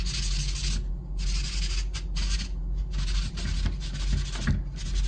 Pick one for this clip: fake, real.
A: real